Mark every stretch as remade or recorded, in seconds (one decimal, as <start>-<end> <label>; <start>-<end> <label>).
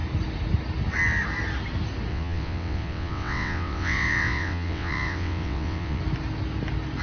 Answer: 0.0-2.1 recorded; 2.1-6.0 remade; 6.0-7.0 recorded